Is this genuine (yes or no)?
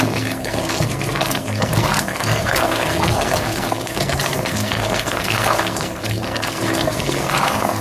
no